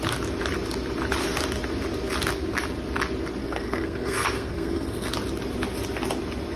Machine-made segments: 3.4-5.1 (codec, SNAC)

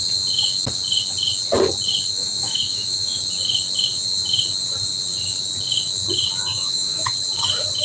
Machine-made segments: 2.1-3.2 (autoencoder, DAC-VAE); 6.4-7.1

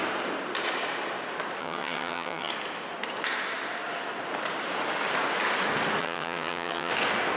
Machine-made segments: 1.6-2.5 (vocoder, HiFi-GAN); 6.0-6.9

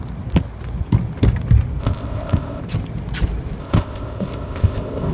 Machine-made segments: 1.8-2.6 (codec, ZipCodec); 3.6-5.1

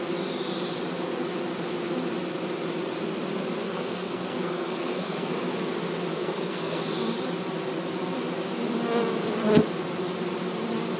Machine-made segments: 3.6-5.3 (codec, SNAC); 6.1-6.8